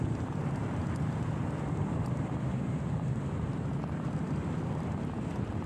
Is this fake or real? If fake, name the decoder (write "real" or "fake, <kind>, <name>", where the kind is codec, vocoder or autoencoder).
fake, vocoder, BigVGAN v2